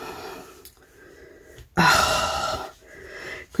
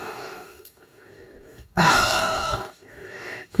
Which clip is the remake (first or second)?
second